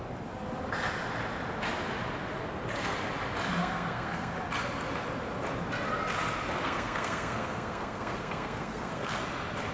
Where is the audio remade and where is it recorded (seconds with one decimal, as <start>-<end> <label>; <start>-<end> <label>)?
0.0-3.6 recorded; 3.6-4.3 remade; 4.3-6.6 recorded; 6.6-9.2 remade; 9.2-9.7 recorded